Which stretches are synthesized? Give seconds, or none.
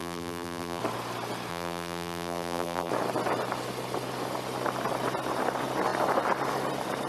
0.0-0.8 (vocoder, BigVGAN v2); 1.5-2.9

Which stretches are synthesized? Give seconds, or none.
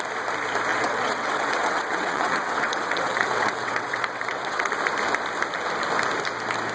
0.7-4.7 (vocoder, WaveNeXt)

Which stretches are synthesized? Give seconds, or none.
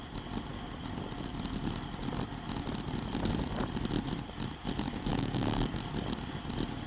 5.1-5.8 (codec, DAC)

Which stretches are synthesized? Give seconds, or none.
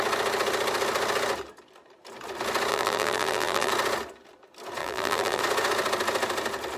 2.7-3.7 (vocoder, BigVGAN v2); 4.8-5.4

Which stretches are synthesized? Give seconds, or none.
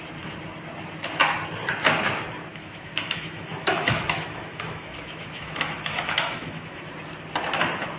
2.5-6.9 (autoencoder, DAC-VAE)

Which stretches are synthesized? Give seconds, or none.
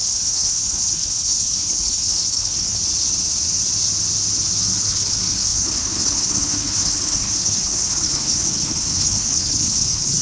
0.0-2.8 (codec, HILCodec); 4.8-10.2